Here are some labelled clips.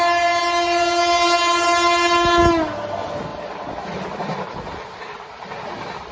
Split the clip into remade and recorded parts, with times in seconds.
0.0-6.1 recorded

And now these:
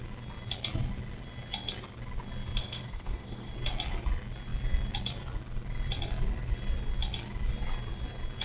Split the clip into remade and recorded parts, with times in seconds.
0.0-2.6 recorded; 2.6-3.5 remade; 3.5-8.4 recorded

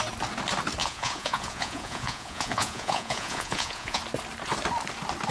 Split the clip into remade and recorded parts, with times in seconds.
0.0-0.8 recorded; 0.8-4.0 remade; 4.0-5.3 recorded

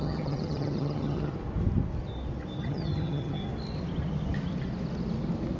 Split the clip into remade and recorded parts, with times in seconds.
0.0-1.3 remade; 1.3-2.6 recorded; 2.6-3.4 remade; 3.4-5.6 recorded

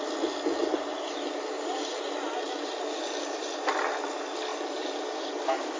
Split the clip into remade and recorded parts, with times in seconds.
0.0-0.6 recorded; 0.6-3.7 remade; 3.7-4.5 recorded; 4.5-5.3 remade; 5.3-5.8 recorded